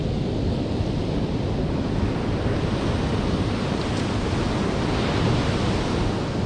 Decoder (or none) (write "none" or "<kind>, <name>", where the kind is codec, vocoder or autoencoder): none